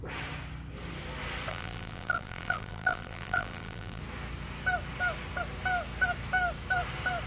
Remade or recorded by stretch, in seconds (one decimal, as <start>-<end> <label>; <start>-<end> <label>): 0.0-1.5 recorded; 1.5-4.0 remade; 4.0-7.3 recorded